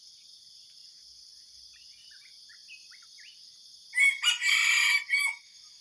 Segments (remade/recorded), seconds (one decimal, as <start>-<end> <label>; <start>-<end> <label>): 0.0-5.8 recorded